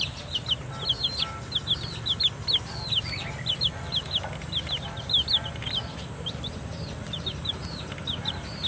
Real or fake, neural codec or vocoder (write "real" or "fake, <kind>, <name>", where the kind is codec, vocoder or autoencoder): real